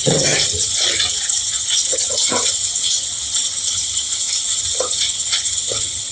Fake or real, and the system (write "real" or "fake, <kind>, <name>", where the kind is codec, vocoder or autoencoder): fake, vocoder, HiFi-GAN